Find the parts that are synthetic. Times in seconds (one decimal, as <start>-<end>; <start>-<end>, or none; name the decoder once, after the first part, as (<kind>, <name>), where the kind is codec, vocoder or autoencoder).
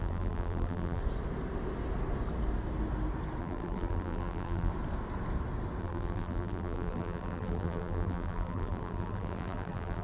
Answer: 0.0-1.0 (vocoder, BigVGAN v2); 3.4-4.7; 5.8-10.0